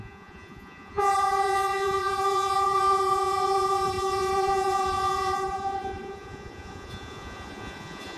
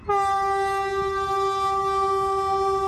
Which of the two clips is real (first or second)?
second